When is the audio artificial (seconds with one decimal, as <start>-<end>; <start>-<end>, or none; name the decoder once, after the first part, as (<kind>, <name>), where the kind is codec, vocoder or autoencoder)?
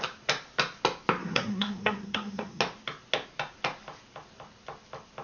1.2-2.6 (codec, SNAC)